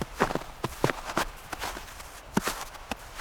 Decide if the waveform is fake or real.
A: real